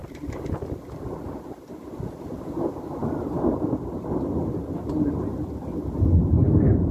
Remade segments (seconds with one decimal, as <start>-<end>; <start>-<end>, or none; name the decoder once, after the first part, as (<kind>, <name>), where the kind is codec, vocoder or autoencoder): none